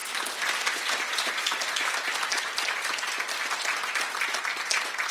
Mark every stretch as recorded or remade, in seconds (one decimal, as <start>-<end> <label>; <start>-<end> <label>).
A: 0.0-5.1 recorded